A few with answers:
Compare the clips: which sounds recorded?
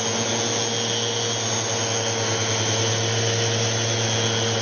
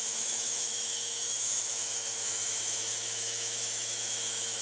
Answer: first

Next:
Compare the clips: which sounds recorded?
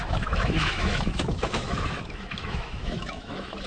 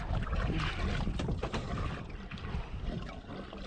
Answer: second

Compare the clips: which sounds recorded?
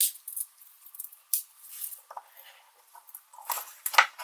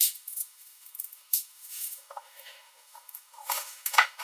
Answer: first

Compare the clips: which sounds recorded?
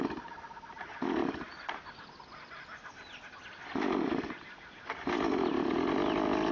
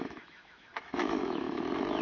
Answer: first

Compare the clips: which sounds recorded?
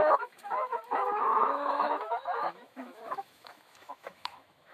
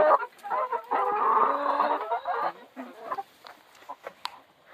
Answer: second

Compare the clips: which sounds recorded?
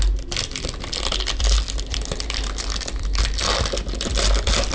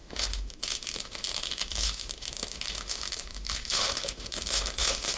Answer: first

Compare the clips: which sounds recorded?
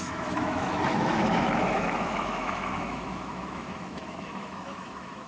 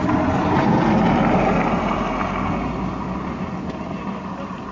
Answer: second